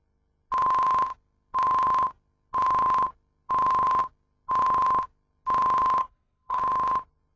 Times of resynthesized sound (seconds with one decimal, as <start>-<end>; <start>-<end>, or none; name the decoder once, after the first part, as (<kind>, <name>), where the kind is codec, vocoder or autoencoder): 6.0-6.6 (codec, HILCodec)